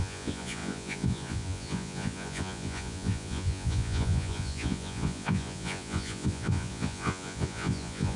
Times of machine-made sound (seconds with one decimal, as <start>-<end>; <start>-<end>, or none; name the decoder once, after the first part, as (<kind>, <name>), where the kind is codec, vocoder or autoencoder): 0.0-8.2 (vocoder, Vocos)